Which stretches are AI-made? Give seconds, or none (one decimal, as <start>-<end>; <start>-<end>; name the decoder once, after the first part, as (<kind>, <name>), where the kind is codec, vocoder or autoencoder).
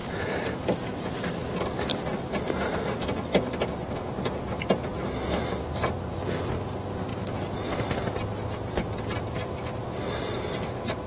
0.0-1.4 (vocoder, BigVGAN v2)